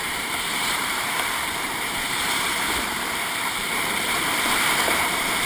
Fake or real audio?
fake